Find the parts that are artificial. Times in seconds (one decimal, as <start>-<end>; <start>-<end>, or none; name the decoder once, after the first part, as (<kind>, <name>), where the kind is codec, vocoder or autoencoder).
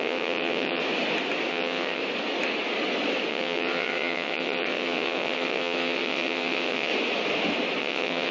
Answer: 0.0-0.8 (vocoder, WaveNeXt); 1.5-2.0; 3.3-6.9; 7.8-8.3